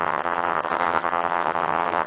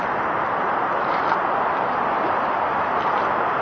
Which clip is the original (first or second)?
second